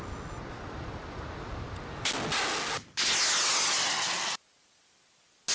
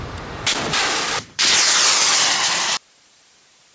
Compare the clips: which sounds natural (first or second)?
first